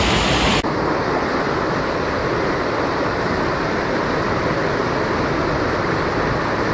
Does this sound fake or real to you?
real